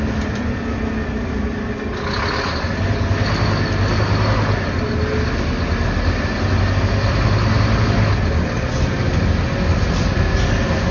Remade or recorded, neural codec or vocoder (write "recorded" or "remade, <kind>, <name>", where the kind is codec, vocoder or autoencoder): recorded